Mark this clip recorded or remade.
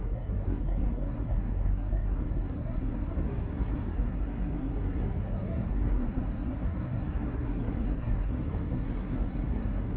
remade